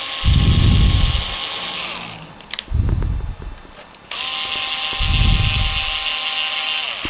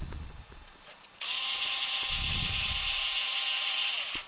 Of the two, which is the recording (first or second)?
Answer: first